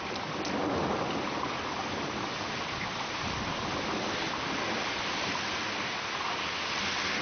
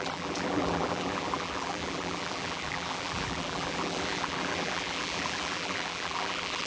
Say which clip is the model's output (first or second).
second